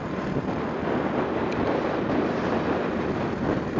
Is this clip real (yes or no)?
yes